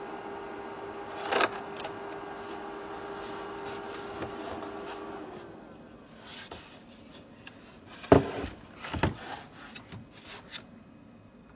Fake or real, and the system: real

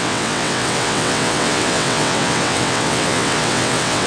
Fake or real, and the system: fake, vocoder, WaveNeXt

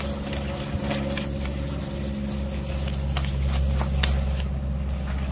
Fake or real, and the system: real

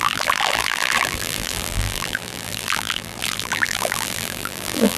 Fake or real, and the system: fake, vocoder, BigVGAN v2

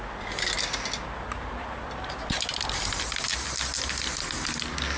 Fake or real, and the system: real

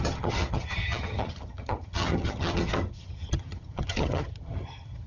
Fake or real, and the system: fake, vocoder, HiFi-GAN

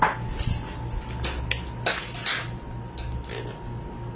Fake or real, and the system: real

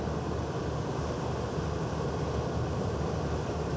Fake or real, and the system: real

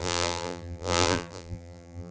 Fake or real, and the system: fake, vocoder, BigVGAN v2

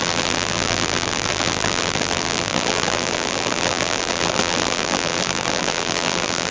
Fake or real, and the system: fake, vocoder, BigVGAN v2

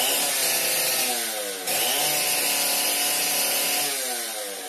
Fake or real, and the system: real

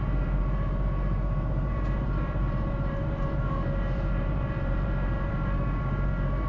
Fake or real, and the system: fake, vocoder, BigVGAN v2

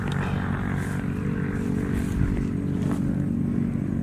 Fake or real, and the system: real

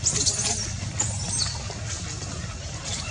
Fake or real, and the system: real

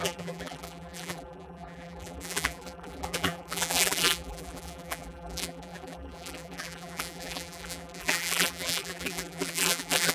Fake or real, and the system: fake, vocoder, BigVGAN v2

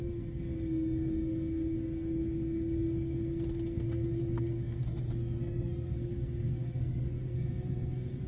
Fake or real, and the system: fake, codec, SNAC